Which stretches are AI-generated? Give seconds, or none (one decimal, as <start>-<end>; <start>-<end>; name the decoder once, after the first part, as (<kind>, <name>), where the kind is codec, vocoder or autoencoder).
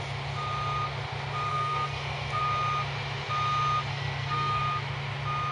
1.5-2.4 (codec, SNAC); 3.9-4.6